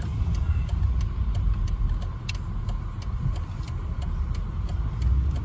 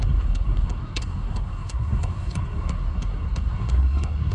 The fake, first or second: second